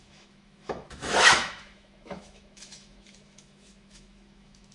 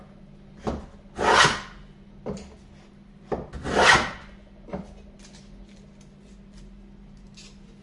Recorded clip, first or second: second